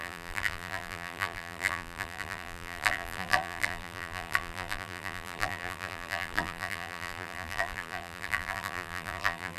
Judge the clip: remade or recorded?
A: remade